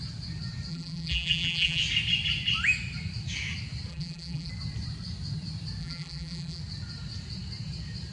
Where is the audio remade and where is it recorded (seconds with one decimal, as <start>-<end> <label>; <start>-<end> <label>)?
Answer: 0.0-0.7 recorded; 0.7-1.8 remade; 1.8-3.9 recorded; 3.9-4.5 remade; 4.5-5.8 recorded; 5.8-6.6 remade; 6.6-8.1 recorded

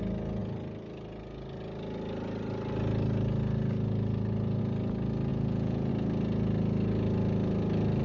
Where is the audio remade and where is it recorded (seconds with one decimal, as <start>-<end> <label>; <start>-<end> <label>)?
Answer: 0.0-5.3 recorded; 5.3-5.9 remade; 5.9-8.0 recorded

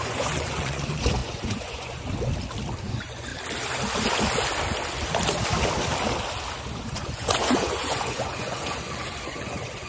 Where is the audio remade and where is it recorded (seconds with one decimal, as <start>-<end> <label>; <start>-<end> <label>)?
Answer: 0.0-2.3 remade; 2.3-2.8 recorded; 2.8-3.3 remade; 3.3-6.7 recorded; 6.7-9.9 remade

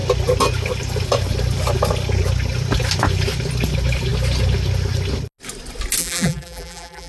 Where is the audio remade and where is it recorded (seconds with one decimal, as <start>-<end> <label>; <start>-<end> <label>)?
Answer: 0.0-6.0 recorded; 6.0-7.1 remade

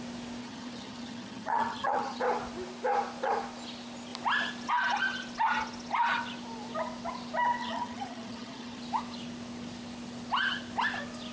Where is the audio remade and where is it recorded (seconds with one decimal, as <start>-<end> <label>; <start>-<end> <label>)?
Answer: 0.0-0.4 recorded; 0.4-2.2 remade; 2.2-7.6 recorded; 7.6-8.8 remade; 8.8-11.3 recorded

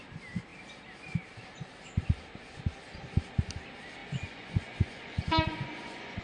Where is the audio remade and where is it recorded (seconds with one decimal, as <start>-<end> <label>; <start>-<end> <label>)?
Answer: 0.0-4.0 recorded; 4.0-6.2 remade

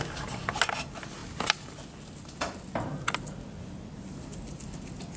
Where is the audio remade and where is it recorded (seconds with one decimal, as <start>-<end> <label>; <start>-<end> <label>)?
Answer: 0.0-5.2 recorded

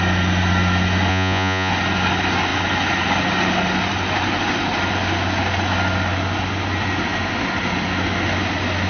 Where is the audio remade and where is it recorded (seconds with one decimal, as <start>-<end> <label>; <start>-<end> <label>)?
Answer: 0.0-1.1 recorded; 1.1-1.7 remade; 1.7-8.9 recorded